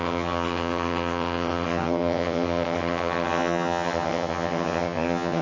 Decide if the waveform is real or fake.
fake